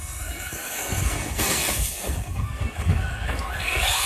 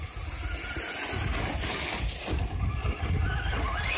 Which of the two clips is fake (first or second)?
first